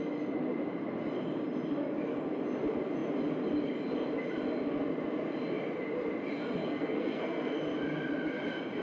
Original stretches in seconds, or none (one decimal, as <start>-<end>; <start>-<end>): 0.0-6.6; 7.6-8.8